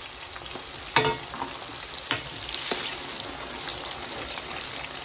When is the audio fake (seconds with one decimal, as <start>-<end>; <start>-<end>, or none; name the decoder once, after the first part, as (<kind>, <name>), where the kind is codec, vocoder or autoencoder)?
1.7-3.0 (vocoder, BigVGAN v2); 3.7-5.0